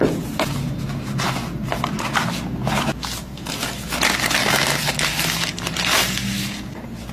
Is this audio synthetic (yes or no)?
no